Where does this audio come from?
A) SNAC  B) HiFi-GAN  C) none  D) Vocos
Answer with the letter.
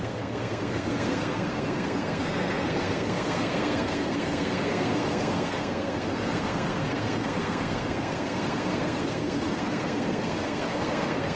A